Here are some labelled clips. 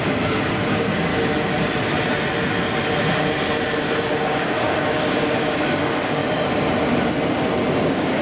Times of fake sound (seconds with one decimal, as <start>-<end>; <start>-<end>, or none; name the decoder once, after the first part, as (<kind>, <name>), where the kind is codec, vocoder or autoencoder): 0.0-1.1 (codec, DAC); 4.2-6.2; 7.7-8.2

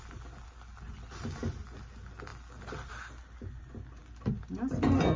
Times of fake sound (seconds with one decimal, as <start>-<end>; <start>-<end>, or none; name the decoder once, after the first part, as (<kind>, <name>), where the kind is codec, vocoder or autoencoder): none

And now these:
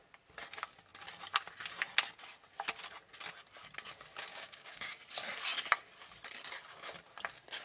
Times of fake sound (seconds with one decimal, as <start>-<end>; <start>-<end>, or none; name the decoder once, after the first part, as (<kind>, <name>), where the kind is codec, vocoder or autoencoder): 4.3-5.0 (codec, DAC)

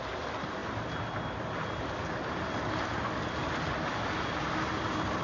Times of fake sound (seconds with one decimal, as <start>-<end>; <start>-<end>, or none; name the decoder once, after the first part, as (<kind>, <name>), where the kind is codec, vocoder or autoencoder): none